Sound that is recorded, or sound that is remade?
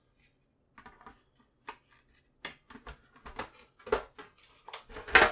recorded